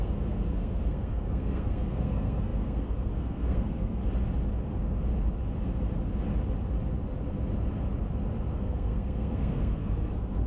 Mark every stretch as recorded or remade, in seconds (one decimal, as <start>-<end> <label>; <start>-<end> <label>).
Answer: 0.0-4.0 remade; 4.0-8.5 recorded; 8.5-10.5 remade